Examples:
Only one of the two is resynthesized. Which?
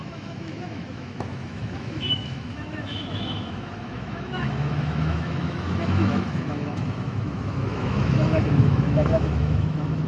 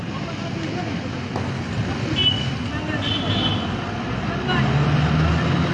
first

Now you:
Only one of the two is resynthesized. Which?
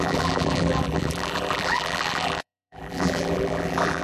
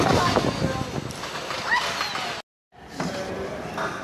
first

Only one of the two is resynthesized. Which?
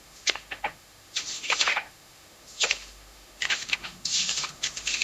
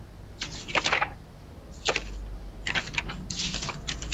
first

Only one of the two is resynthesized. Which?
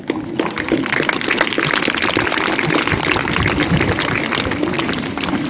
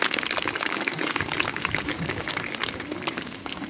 second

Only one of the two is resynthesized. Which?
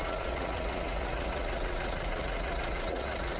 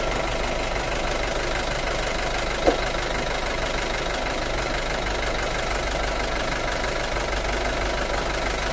first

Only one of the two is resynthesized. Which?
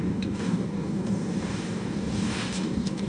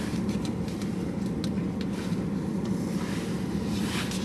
first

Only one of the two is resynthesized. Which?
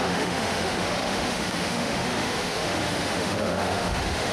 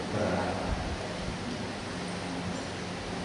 first